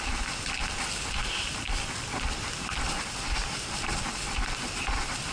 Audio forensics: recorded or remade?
recorded